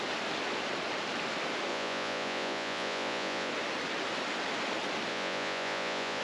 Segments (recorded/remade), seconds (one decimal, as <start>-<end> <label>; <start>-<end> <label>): 0.0-1.7 recorded; 1.7-3.5 remade; 3.5-5.1 recorded; 5.1-6.2 remade